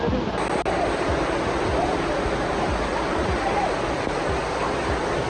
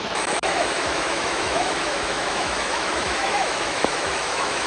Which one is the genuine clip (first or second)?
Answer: first